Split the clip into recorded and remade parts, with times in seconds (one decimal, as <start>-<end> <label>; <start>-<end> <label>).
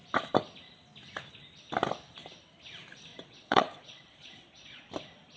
0.0-3.1 recorded; 3.1-4.9 remade; 4.9-5.4 recorded